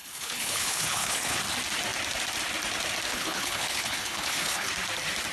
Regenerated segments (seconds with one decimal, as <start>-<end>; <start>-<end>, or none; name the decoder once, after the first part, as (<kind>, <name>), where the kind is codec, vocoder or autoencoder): 0.0-1.4 (codec, HILCodec); 3.1-4.7